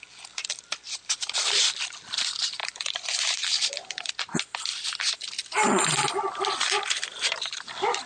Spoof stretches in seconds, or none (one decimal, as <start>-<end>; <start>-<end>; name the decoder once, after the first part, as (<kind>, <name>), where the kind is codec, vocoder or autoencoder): 1.0-1.6 (vocoder, BigVGAN v2); 2.6-4.1